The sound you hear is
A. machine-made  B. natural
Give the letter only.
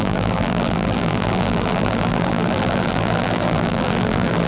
A